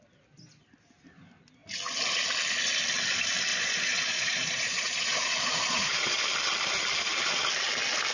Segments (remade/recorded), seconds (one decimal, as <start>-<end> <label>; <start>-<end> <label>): 0.0-3.5 recorded; 3.5-6.2 remade; 6.2-8.1 recorded